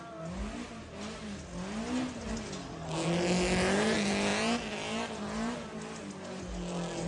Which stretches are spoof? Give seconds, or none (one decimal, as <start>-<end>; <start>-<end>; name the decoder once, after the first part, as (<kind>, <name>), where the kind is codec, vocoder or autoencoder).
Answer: none